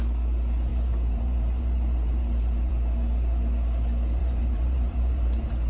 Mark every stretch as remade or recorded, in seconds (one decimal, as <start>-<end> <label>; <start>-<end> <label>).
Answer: 0.0-0.7 recorded; 0.7-2.7 remade; 2.7-4.2 recorded; 4.2-5.7 remade